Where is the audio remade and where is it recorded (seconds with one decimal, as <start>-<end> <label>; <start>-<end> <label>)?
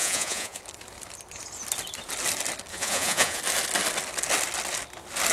0.0-0.6 remade; 0.6-2.7 recorded; 2.7-3.4 remade; 3.4-5.3 recorded